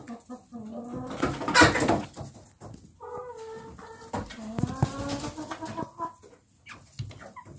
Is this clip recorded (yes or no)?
yes